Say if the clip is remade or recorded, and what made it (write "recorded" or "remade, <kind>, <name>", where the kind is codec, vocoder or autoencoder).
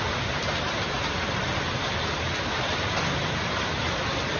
recorded